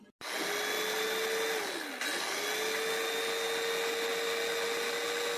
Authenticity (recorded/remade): recorded